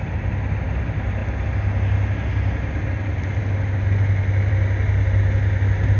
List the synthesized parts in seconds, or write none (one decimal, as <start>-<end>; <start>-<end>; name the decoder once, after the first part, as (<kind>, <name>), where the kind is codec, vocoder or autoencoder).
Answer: none